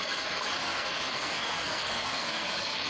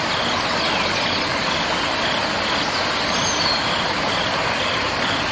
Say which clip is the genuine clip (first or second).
second